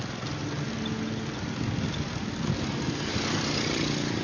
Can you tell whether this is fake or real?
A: real